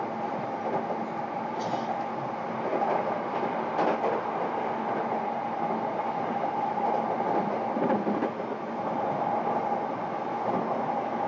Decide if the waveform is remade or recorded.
recorded